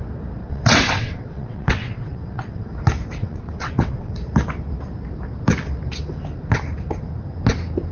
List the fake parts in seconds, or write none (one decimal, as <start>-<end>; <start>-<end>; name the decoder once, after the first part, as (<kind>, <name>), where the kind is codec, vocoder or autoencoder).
0.4-2.7 (vocoder, WaveNeXt); 3.2-4.1